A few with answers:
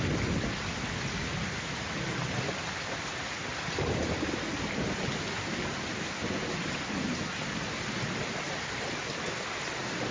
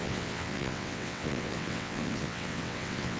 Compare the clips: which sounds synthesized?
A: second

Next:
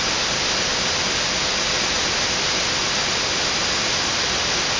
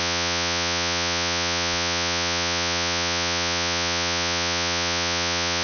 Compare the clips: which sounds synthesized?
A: second